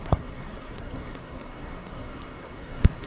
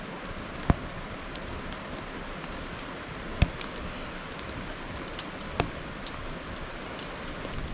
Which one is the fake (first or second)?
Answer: first